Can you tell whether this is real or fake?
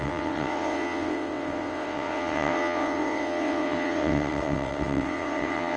fake